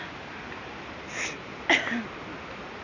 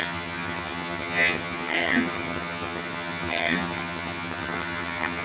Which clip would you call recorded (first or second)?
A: first